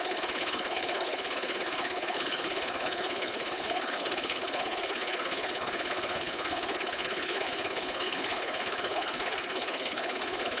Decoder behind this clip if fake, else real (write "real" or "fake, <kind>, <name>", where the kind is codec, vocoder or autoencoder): fake, codec, HILCodec